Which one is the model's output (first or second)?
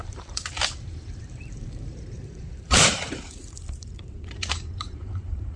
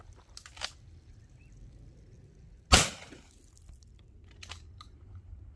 first